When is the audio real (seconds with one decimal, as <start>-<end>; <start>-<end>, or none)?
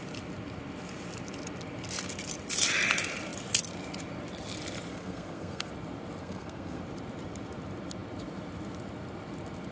0.0-4.9; 5.7-6.2; 6.8-9.7